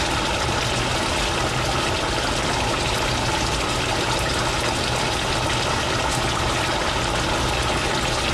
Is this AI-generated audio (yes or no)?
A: no